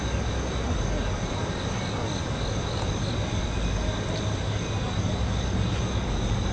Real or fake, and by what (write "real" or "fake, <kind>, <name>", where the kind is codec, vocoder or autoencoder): real